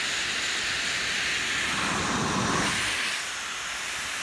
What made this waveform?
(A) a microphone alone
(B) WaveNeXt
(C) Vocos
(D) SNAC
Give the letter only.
A